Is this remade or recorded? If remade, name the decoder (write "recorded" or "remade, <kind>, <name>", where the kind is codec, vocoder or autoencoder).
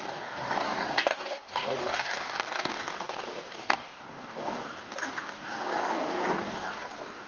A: remade, codec, DAC